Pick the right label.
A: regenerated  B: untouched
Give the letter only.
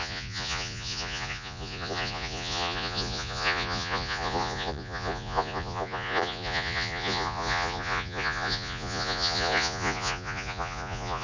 A